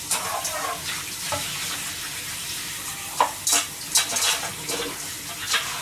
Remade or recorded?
recorded